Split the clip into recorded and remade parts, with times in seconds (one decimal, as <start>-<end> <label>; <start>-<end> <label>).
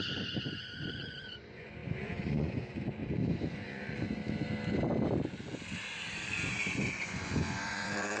0.0-3.0 remade; 3.0-3.5 recorded; 3.5-4.2 remade; 4.2-6.5 recorded; 6.5-8.2 remade